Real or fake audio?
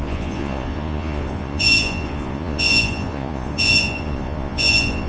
fake